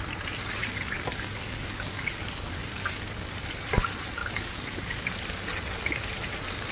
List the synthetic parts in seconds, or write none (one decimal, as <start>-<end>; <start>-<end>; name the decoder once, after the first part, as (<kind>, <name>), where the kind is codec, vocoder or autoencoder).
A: 0.6-3.3 (codec, DAC); 4.2-5.1